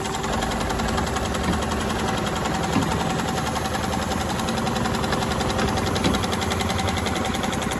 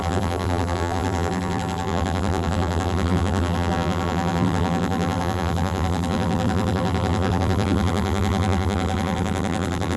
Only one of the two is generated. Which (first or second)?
second